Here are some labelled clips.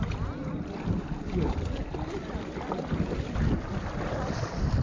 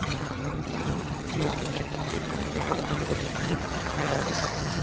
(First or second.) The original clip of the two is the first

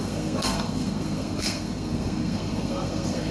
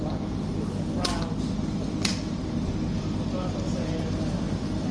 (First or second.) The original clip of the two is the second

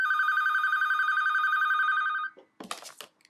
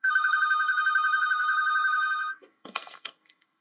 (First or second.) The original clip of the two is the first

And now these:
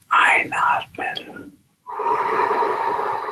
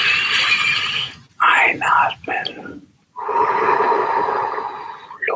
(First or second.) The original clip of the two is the second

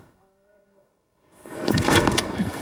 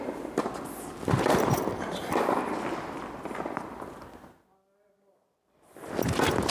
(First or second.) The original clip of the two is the second